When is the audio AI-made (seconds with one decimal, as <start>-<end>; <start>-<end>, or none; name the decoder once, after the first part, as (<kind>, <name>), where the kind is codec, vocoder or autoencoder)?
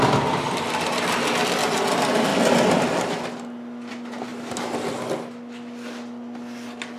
none